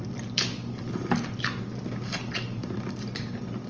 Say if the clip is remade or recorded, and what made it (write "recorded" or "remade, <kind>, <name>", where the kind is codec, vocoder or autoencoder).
recorded